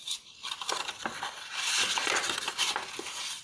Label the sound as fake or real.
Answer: real